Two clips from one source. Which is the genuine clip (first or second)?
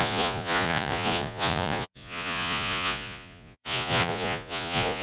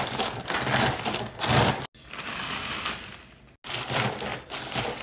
second